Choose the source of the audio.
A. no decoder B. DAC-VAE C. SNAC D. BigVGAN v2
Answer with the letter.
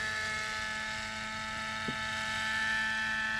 A